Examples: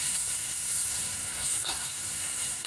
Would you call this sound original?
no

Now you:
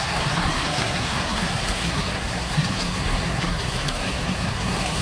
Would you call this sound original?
no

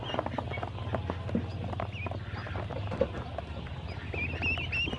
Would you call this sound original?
yes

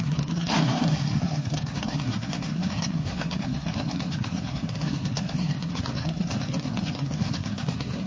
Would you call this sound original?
no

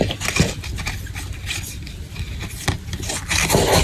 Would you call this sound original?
yes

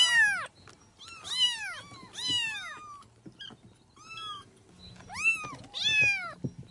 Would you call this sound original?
yes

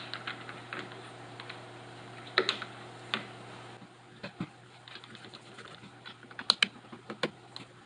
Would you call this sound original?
yes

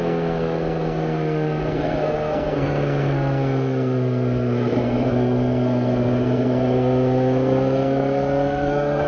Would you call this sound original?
no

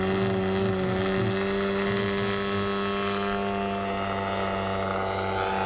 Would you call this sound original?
yes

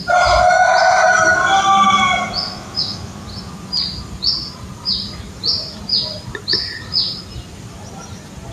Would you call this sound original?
yes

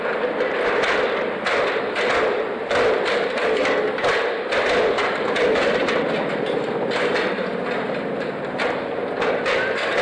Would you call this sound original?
yes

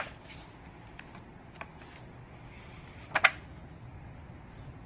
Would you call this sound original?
yes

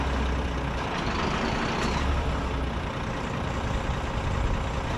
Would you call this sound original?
yes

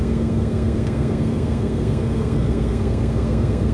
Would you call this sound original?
no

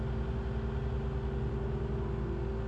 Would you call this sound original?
yes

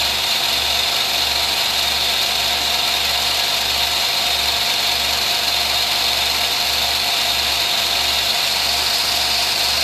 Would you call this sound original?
yes